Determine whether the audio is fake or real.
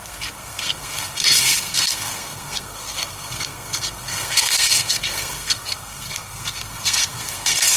fake